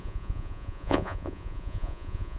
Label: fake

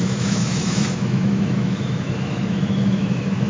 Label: fake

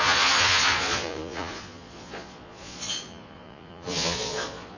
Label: fake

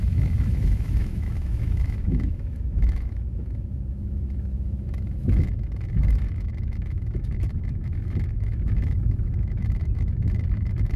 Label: fake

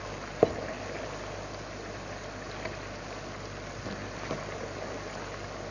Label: real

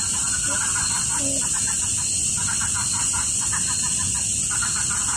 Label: real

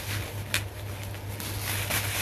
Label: real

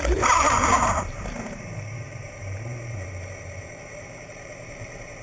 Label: fake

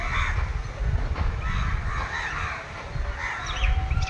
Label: real